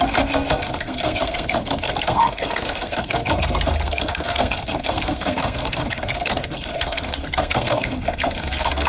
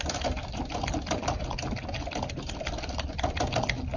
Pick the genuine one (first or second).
second